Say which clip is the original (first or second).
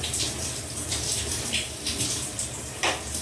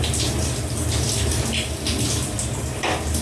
second